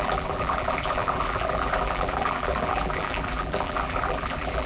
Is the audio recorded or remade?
remade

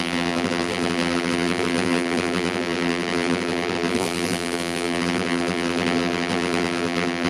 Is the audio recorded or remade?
remade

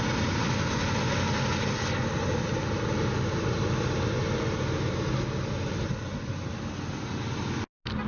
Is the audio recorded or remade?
recorded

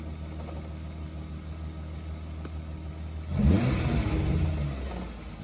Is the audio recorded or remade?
recorded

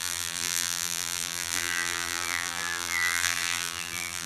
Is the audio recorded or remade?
remade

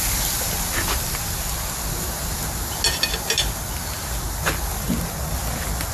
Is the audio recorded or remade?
recorded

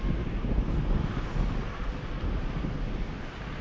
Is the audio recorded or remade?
recorded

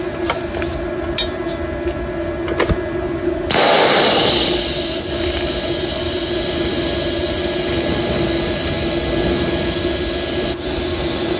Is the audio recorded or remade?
recorded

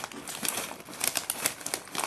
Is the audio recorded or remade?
recorded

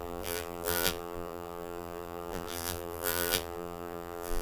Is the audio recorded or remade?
remade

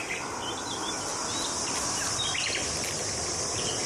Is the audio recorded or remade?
recorded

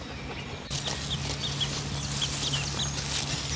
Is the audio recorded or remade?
recorded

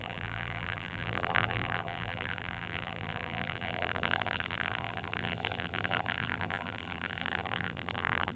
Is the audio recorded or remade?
remade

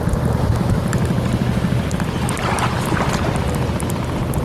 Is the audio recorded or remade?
recorded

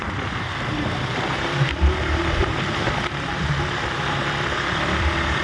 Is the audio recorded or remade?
remade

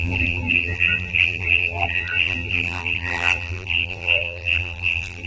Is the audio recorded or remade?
remade